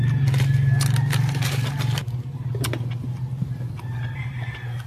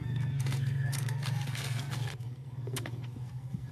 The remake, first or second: second